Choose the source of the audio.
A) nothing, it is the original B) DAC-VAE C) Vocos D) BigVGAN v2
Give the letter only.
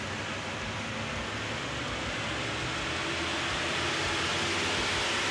A